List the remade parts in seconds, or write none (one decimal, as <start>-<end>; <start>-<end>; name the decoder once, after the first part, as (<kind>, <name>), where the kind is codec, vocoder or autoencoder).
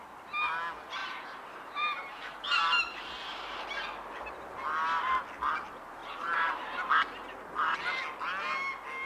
1.0-3.8 (vocoder, BigVGAN v2); 6.0-6.9